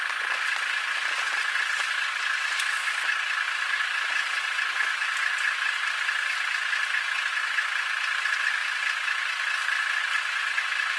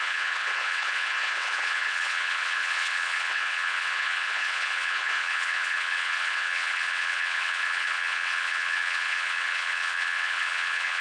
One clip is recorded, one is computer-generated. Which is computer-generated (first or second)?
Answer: second